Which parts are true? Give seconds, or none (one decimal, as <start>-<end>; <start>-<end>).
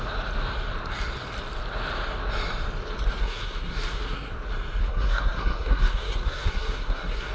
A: 0.0-3.2; 4.3-4.8